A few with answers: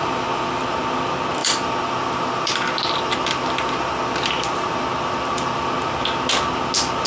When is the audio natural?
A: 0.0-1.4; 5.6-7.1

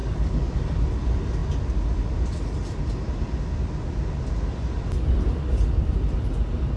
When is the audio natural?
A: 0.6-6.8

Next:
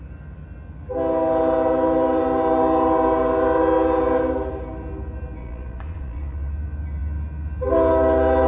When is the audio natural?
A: 0.0-5.4; 6.5-8.5